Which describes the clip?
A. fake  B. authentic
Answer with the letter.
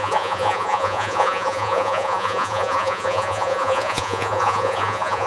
A